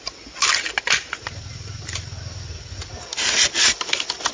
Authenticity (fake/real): real